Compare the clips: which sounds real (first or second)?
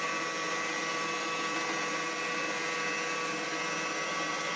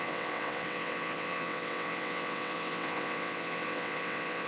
first